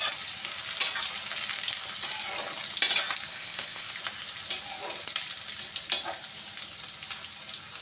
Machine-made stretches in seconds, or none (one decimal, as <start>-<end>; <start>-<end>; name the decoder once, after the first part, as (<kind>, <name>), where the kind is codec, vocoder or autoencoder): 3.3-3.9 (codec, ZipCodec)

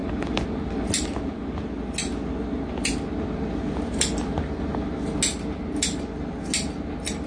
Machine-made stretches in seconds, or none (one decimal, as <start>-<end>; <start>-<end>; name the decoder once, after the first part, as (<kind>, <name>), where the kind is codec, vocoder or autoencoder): none

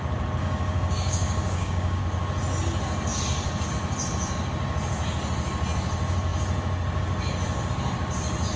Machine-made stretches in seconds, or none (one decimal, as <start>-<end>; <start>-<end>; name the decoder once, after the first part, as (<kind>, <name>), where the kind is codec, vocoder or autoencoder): 0.4-2.0 (codec, DAC)